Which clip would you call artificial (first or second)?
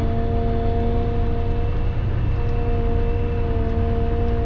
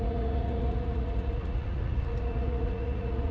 second